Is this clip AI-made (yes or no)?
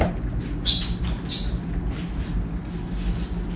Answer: no